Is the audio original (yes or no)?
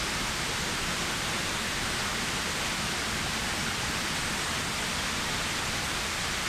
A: yes